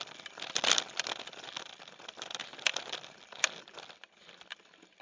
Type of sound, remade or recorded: recorded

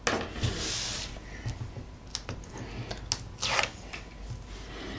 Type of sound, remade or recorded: recorded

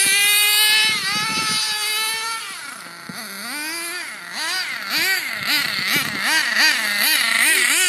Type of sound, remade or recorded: recorded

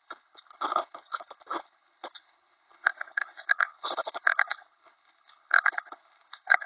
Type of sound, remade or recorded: remade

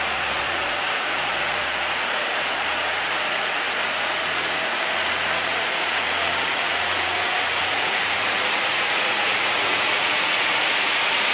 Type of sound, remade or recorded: remade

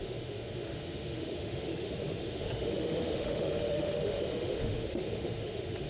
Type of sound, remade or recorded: remade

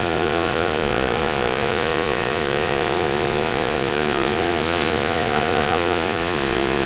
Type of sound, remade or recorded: remade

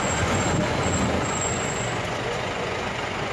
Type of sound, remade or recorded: remade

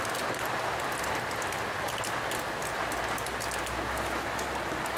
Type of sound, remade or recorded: recorded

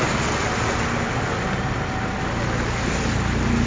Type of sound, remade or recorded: recorded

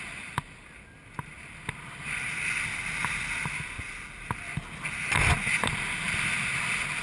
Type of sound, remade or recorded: recorded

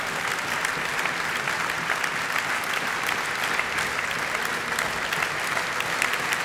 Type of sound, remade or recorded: recorded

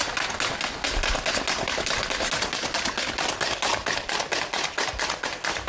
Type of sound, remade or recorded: recorded